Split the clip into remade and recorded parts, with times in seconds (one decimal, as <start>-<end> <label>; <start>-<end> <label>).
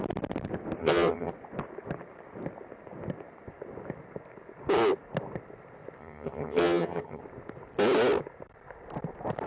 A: 0.0-0.8 recorded; 0.8-1.3 remade; 1.3-6.0 recorded; 6.0-7.2 remade; 7.2-9.5 recorded